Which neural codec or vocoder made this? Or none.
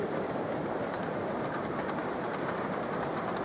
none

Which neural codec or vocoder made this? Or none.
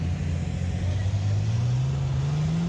none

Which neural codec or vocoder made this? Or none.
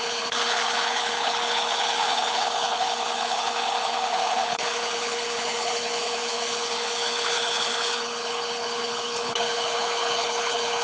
codec, HILCodec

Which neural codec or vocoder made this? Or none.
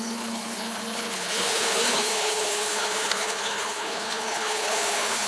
codec, HILCodec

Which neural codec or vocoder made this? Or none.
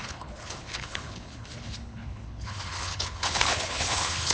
codec, HILCodec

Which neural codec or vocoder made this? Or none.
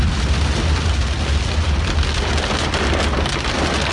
none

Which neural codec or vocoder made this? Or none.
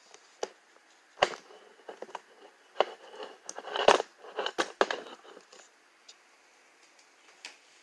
none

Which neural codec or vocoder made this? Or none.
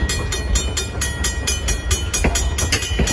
none